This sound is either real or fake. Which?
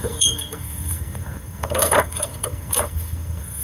fake